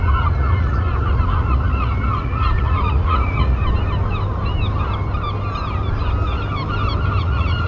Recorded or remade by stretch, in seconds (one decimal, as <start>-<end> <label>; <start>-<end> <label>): 0.0-3.6 remade; 3.6-7.2 recorded; 7.2-7.7 remade

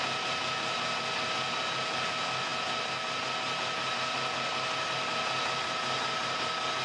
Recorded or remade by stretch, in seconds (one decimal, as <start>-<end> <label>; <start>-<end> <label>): 0.0-6.8 recorded

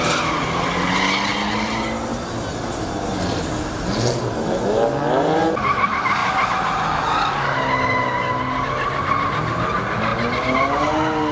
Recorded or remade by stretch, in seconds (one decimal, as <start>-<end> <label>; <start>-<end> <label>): 0.0-11.3 recorded

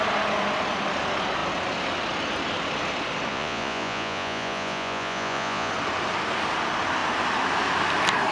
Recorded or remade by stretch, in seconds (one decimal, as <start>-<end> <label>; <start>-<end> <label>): 0.0-3.3 recorded; 3.3-5.7 remade; 5.7-8.3 recorded